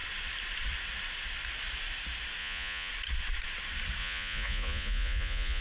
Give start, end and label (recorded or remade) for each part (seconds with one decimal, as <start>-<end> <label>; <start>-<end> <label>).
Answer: 0.0-2.4 recorded; 2.4-2.9 remade; 2.9-4.0 recorded; 4.0-5.6 remade